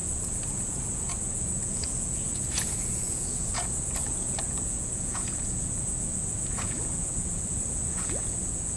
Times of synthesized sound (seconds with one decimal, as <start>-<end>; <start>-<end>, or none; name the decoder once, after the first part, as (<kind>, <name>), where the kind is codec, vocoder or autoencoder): 0.0-8.8 (vocoder, Vocos)